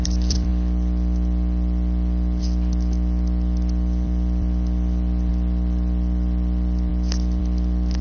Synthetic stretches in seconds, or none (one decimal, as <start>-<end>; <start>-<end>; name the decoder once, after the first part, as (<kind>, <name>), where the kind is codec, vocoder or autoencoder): 0.0-6.9 (vocoder, BigVGAN v2); 7.4-8.0